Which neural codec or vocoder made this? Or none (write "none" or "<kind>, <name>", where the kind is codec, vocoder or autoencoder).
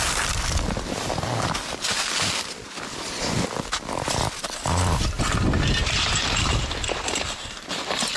none